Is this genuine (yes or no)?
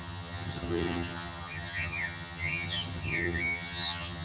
no